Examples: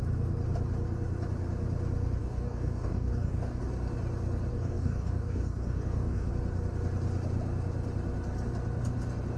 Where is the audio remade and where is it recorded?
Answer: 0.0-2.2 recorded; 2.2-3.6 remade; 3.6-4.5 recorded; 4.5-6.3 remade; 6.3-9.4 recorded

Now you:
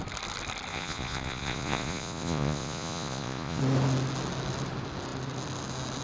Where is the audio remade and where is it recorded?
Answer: 0.0-0.7 recorded; 0.7-3.6 remade; 3.6-6.0 recorded

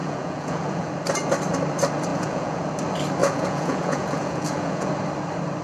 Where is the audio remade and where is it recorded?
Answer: 0.0-0.9 remade; 0.9-2.1 recorded; 2.1-2.7 remade; 2.7-3.2 recorded; 3.2-4.9 remade; 4.9-5.6 recorded

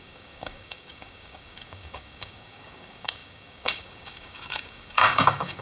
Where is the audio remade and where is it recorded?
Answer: 0.0-5.6 remade

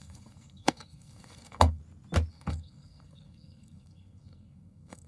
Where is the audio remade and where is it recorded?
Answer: 0.0-1.8 remade; 1.8-2.3 recorded; 2.3-5.1 remade

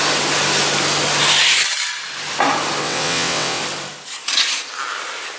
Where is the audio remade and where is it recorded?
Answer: 0.0-2.8 recorded; 2.8-3.6 remade; 3.6-5.4 recorded